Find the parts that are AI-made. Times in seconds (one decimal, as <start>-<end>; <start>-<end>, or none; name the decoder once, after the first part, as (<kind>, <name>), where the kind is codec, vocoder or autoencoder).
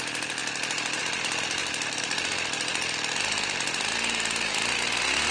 none